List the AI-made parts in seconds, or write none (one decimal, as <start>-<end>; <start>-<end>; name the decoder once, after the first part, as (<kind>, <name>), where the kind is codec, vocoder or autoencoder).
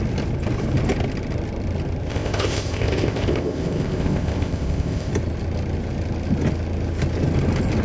2.1-5.1 (codec, ZipCodec)